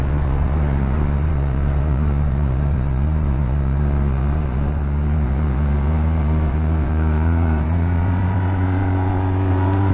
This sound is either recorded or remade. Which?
remade